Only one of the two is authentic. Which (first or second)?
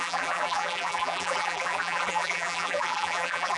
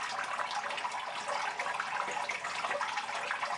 second